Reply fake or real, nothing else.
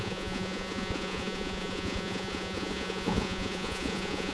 fake